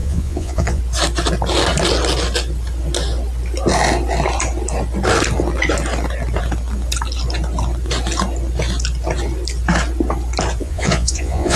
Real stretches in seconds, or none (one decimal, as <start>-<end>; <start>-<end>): 0.8-10.6